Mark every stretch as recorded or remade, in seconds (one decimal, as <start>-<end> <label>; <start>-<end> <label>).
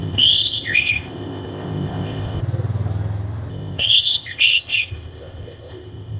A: 0.0-2.4 remade; 2.4-3.5 recorded; 3.5-6.2 remade